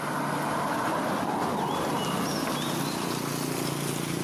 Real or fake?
real